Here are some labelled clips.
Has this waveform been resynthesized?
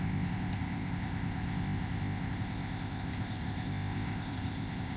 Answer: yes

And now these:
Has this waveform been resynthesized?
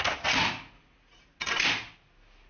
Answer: no